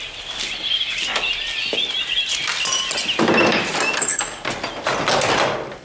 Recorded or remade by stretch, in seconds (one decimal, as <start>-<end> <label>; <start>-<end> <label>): 0.0-5.8 recorded